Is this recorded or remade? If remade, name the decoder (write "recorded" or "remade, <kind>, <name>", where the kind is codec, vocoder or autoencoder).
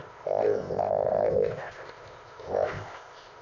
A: remade, codec, ZipCodec